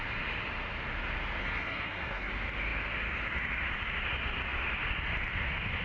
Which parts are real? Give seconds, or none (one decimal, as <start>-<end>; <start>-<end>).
0.0-1.4; 2.3-5.8